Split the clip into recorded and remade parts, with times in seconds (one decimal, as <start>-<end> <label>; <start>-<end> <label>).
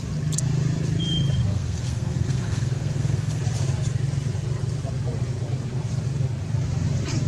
0.0-1.5 recorded; 1.5-3.4 remade; 3.4-7.3 recorded